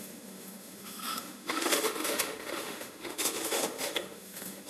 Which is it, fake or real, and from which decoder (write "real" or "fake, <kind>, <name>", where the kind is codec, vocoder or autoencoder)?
fake, autoencoder, DAC-VAE